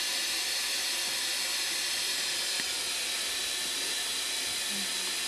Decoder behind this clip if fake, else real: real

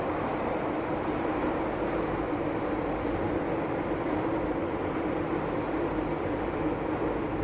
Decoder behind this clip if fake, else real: real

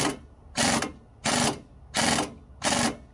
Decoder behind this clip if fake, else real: real